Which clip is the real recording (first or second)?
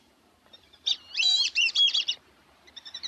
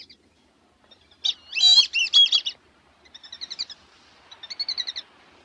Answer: second